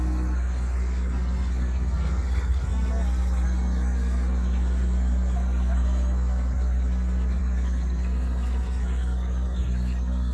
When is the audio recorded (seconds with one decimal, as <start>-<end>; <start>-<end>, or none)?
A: none